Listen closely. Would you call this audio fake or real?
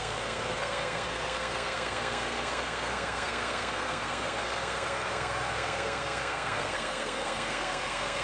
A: fake